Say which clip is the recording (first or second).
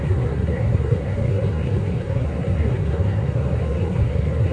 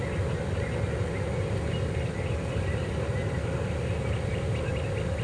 second